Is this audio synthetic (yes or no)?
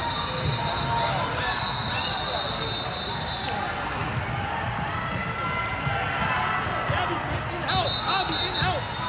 no